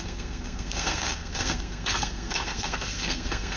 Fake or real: fake